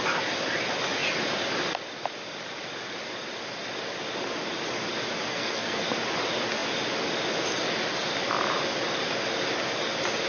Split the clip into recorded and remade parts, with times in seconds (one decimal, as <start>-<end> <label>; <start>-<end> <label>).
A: 0.0-5.3 recorded; 5.3-5.8 remade; 5.8-10.3 recorded